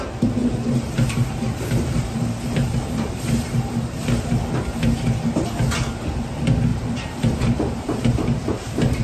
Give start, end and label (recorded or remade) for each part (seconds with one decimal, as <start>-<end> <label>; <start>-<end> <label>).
0.0-0.4 recorded; 0.4-4.6 remade; 4.6-6.7 recorded; 6.7-9.0 remade

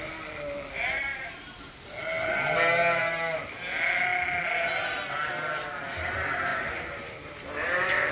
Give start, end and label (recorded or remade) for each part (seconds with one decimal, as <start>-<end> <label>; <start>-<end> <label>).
0.0-1.1 recorded; 1.1-1.7 remade; 1.7-8.1 recorded